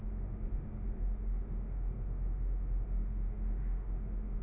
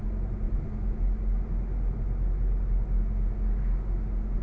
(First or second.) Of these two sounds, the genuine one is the second